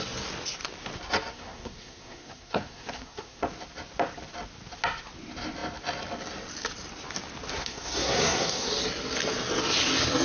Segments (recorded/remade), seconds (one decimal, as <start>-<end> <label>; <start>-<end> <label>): 0.0-1.3 recorded; 1.3-3.4 remade; 3.4-7.5 recorded; 7.5-8.7 remade; 8.7-10.2 recorded